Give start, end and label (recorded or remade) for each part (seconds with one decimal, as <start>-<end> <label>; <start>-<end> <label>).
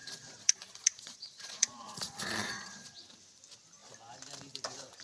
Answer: 0.0-3.0 remade; 3.0-5.0 recorded